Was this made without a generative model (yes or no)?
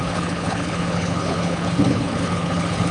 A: no